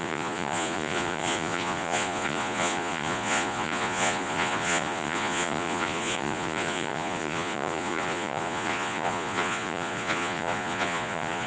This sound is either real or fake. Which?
fake